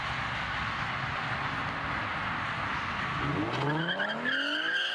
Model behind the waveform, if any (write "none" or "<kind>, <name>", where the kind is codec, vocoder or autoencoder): none